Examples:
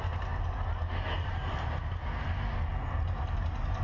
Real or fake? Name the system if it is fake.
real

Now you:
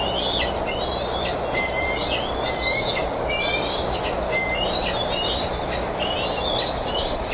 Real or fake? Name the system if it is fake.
real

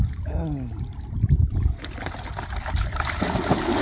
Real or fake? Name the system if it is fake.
real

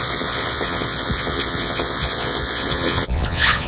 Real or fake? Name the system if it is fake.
fake, vocoder, Vocos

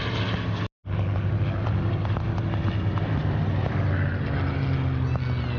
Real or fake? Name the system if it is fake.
real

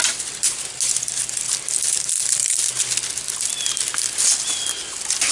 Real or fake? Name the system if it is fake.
real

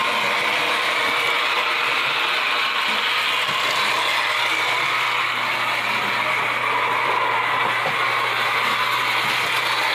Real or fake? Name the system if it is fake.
real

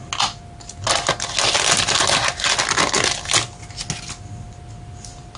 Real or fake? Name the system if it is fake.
real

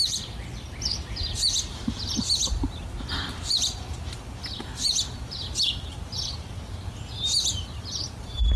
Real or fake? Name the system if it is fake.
real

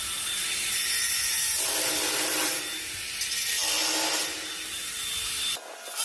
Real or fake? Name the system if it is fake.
real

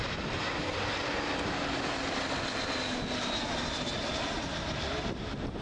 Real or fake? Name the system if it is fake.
real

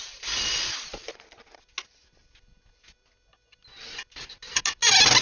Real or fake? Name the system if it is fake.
real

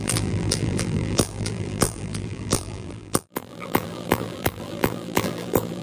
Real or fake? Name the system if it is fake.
fake, vocoder, BigVGAN v2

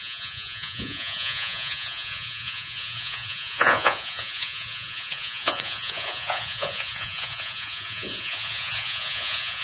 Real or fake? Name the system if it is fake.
fake, vocoder, Vocos